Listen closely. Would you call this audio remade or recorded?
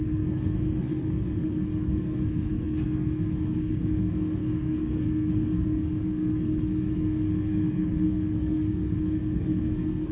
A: remade